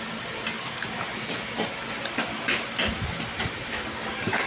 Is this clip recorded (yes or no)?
yes